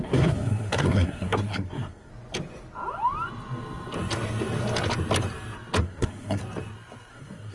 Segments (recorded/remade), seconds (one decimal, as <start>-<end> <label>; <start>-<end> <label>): 0.0-2.1 remade; 2.1-5.8 recorded; 5.8-6.4 remade; 6.4-7.1 recorded; 7.1-7.5 remade